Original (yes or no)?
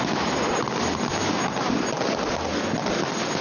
yes